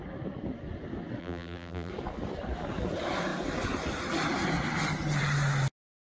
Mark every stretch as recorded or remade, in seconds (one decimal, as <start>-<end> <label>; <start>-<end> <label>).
0.0-1.2 recorded; 1.2-1.9 remade; 1.9-6.0 recorded